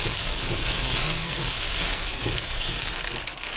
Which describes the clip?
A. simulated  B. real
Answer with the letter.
A